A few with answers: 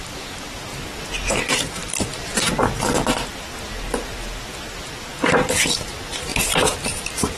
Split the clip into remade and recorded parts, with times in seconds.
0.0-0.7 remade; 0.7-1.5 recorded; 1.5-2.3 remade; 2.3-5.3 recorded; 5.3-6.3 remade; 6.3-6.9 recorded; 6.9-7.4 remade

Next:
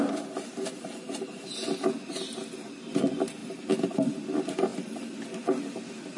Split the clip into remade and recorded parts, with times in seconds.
0.0-4.7 recorded; 4.7-5.3 remade; 5.3-6.2 recorded

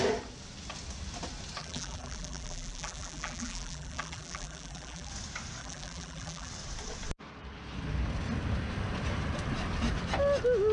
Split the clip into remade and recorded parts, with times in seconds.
0.0-1.6 recorded; 1.6-5.1 remade; 5.1-5.6 recorded; 5.6-6.5 remade; 6.5-10.7 recorded

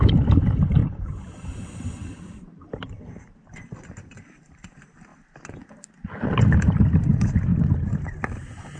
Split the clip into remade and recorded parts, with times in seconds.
0.0-0.8 recorded; 0.8-3.0 remade; 3.0-8.8 recorded

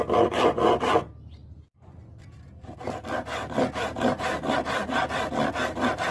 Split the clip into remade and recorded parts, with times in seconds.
0.0-6.1 recorded

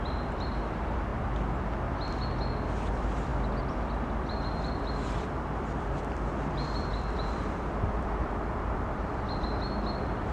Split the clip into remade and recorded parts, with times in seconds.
0.0-1.1 remade; 1.1-2.9 recorded; 2.9-10.3 remade

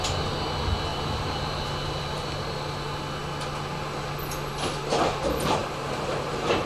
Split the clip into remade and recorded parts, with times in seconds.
0.0-0.9 recorded; 0.9-2.5 remade; 2.5-5.6 recorded; 5.6-6.7 remade

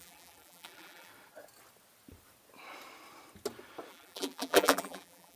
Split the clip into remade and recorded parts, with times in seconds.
0.0-1.1 remade; 1.1-3.9 recorded; 3.9-5.4 remade